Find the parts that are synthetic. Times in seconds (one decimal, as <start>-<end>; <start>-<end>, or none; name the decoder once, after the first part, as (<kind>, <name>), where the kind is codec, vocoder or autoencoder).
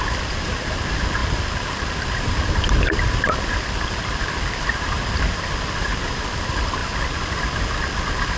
0.0-6.8 (vocoder, BigVGAN v2); 8.0-8.4